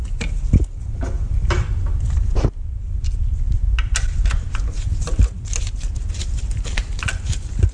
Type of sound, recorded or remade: recorded